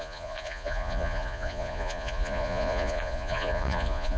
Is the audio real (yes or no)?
no